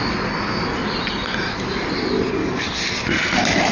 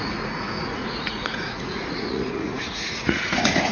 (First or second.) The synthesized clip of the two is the second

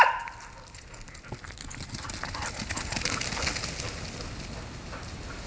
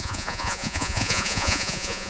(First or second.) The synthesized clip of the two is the second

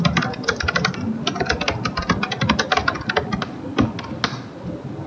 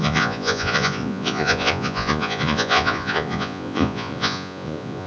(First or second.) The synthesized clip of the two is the second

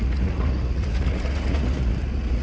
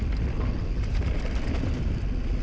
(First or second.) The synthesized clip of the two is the first